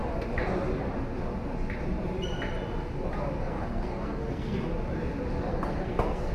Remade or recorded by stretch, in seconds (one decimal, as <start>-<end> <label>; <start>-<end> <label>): 0.0-3.4 recorded; 3.4-4.7 remade; 4.7-5.5 recorded; 5.5-6.3 remade